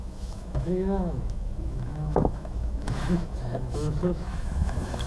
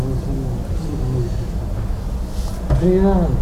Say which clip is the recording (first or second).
second